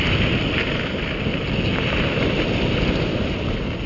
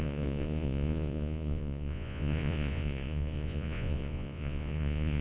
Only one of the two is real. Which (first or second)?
first